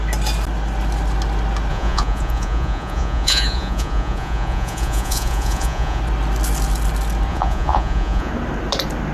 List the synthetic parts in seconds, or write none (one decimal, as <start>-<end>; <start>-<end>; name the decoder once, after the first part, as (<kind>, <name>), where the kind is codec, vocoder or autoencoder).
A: 1.7-6.0 (vocoder, Vocos); 7.3-8.3